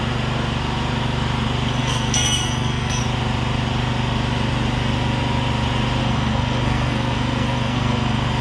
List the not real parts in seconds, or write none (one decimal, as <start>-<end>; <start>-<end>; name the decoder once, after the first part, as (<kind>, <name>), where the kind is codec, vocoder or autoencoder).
1.8-3.0 (codec, SNAC); 6.0-8.4